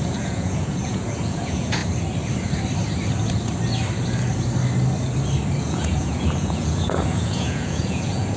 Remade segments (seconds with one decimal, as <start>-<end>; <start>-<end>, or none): 0.0-1.8; 5.6-8.4